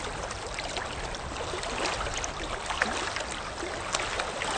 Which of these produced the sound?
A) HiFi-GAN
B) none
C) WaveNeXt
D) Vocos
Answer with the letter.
B